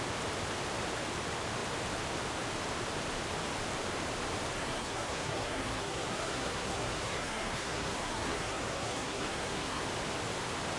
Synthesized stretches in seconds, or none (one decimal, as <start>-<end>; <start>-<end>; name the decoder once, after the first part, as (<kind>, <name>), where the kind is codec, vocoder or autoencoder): 4.6-9.8 (codec, SNAC)

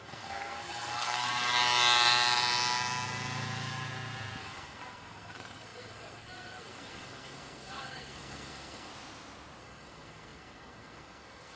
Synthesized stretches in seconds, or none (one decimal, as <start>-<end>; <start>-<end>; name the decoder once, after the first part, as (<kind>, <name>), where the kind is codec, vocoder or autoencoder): 0.0-1.3 (codec, SNAC); 4.4-8.9; 9.6-11.6

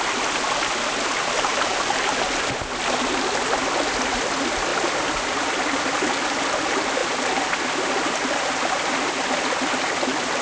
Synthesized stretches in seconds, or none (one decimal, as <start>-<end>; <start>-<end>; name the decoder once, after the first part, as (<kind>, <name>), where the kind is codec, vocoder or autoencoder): none

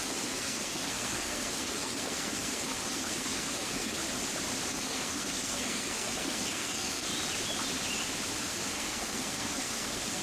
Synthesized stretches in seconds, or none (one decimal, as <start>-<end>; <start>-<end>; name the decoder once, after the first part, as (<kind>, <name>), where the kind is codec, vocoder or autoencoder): 0.0-4.0 (codec, SNAC); 4.7-7.1; 8.4-10.2

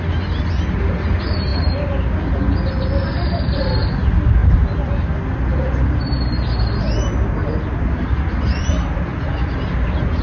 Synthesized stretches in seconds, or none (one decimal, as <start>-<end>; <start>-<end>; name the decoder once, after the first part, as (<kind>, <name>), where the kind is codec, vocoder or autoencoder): none